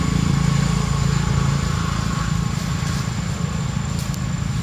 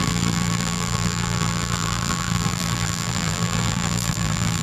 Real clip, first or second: first